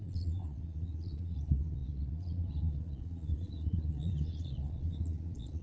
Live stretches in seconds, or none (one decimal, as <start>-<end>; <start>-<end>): none